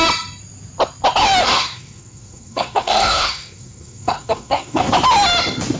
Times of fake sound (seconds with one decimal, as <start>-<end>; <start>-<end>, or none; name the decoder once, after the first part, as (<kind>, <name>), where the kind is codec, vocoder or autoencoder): 1.4-4.9 (codec, SNAC)